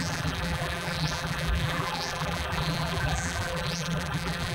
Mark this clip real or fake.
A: fake